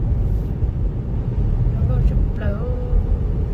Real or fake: fake